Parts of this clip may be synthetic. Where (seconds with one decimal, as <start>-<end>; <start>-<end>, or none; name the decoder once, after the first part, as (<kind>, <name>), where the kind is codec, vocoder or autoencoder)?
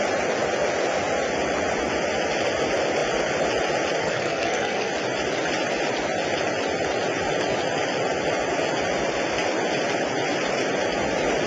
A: 4.0-4.9 (codec, SNAC)